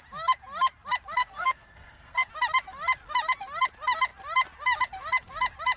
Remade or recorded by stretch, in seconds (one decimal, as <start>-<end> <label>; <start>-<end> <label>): 0.0-1.2 recorded; 1.2-2.3 remade; 2.3-5.8 recorded